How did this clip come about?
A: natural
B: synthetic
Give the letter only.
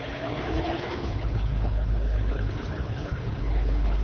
B